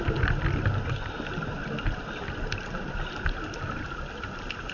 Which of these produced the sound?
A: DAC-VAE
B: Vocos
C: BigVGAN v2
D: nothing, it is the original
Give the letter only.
D